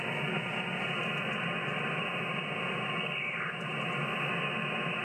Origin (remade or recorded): recorded